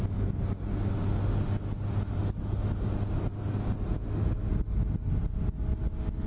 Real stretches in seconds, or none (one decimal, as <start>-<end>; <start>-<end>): 0.0-6.3